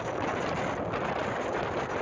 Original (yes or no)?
yes